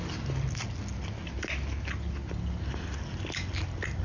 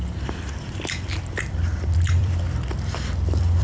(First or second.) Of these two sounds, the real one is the first